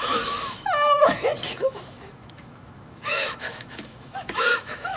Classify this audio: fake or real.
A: fake